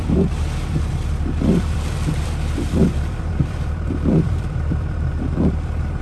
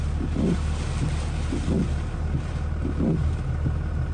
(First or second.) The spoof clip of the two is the first